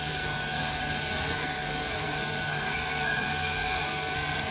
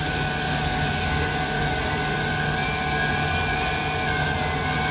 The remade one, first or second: first